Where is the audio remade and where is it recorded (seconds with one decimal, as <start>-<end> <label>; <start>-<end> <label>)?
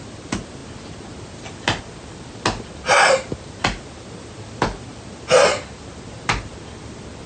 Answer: 0.0-7.3 recorded